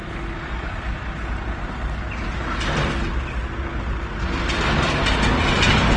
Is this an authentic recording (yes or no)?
yes